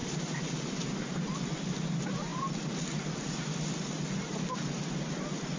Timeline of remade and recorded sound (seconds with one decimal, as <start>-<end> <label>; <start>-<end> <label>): 0.0-5.6 recorded